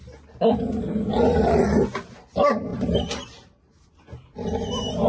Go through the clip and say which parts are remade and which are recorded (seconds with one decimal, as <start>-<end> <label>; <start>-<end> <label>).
0.0-2.7 recorded; 2.7-3.9 remade; 3.9-5.1 recorded